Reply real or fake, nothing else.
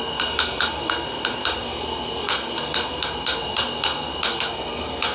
fake